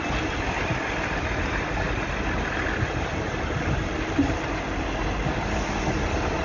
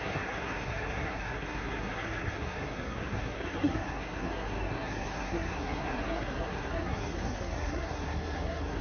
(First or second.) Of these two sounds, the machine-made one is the second